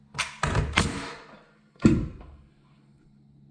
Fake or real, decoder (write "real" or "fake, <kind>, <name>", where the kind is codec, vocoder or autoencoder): real